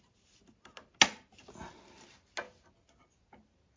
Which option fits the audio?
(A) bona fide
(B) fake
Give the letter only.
A